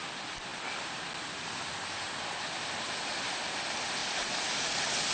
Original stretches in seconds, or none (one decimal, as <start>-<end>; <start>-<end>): 0.0-4.0